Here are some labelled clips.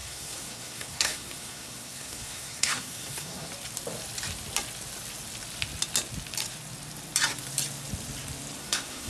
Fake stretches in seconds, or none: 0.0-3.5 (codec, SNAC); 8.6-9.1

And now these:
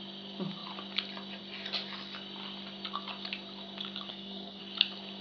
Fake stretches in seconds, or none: 4.1-4.6 (codec, SNAC)